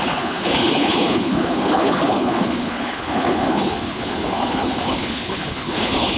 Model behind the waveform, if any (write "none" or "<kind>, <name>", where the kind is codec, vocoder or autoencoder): codec, HILCodec